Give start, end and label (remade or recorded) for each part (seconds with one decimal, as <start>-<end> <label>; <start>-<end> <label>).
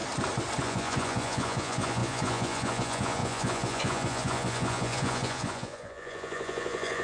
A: 0.0-0.6 recorded; 0.6-7.0 remade